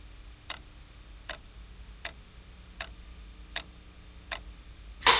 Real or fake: real